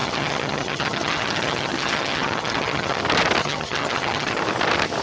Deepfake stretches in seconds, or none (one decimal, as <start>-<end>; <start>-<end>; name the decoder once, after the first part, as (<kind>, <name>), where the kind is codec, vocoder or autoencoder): 0.0-3.0 (vocoder, HiFi-GAN); 3.4-4.4